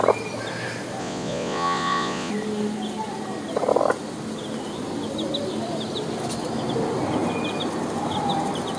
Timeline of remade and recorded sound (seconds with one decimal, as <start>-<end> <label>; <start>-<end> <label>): 0.0-1.0 recorded; 1.0-2.3 remade; 2.3-8.8 recorded